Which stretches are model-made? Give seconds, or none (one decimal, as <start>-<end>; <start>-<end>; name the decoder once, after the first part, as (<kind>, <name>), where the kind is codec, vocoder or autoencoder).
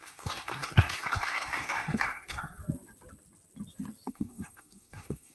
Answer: 0.0-2.6 (codec, SNAC); 4.1-5.3